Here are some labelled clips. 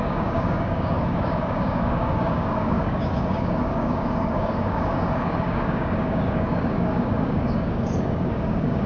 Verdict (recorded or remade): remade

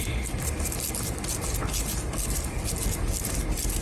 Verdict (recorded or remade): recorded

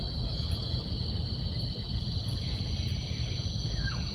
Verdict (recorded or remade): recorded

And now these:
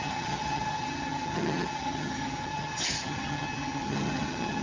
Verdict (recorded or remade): remade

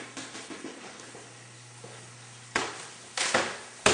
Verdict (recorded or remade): recorded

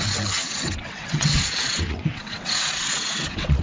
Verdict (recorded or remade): remade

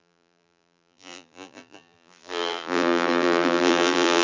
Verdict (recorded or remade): remade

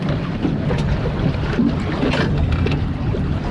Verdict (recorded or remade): recorded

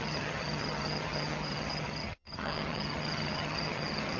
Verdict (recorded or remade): remade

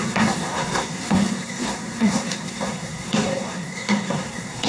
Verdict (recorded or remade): remade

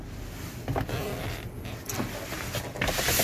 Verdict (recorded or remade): recorded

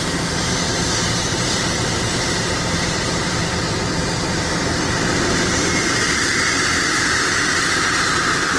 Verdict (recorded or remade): recorded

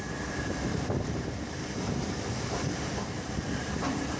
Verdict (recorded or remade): remade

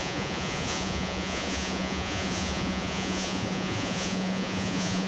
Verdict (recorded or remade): remade